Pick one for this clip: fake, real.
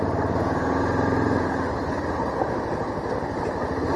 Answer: real